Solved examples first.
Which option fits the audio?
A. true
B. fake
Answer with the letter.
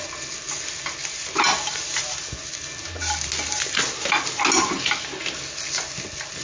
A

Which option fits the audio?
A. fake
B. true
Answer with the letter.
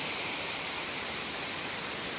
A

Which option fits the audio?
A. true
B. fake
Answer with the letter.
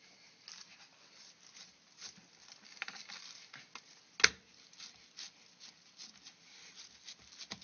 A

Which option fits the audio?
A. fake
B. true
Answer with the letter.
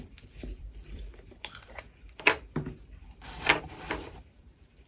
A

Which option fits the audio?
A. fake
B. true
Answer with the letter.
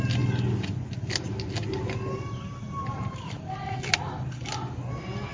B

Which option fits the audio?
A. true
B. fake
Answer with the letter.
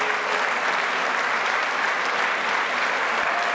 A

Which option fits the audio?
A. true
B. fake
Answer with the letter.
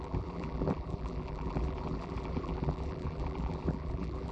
B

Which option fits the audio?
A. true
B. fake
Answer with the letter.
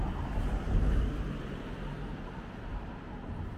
B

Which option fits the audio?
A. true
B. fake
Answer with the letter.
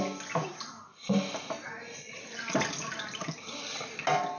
A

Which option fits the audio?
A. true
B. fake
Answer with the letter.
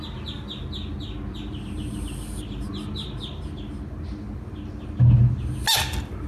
A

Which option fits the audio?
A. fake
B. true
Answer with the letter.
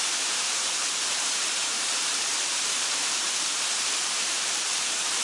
A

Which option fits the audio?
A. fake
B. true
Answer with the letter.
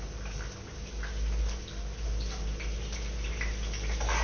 B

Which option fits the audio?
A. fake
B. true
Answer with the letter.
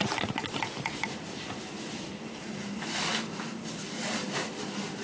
B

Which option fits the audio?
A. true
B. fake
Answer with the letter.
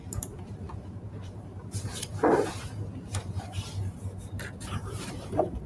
B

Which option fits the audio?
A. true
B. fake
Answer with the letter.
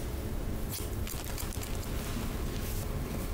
A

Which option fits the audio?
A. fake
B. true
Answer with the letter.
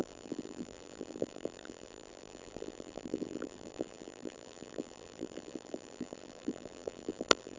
A